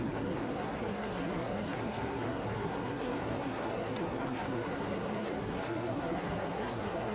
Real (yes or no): no